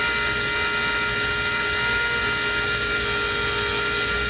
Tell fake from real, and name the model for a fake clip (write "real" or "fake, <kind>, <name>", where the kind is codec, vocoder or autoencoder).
real